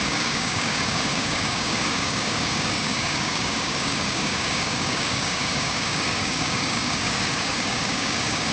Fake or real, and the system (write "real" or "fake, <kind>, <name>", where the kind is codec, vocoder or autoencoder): fake, codec, DAC